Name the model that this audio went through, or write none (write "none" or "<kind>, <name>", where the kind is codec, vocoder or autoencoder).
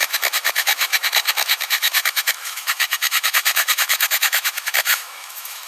autoencoder, DAC-VAE